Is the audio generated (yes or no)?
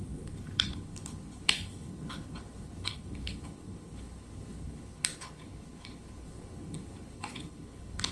yes